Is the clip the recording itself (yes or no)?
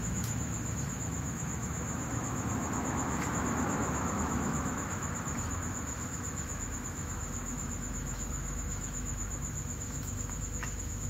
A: no